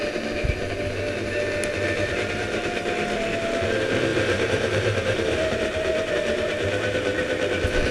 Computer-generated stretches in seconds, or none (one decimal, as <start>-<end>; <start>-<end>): 4.1-6.1